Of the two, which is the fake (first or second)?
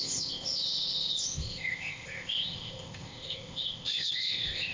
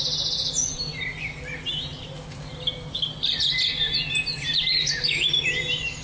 first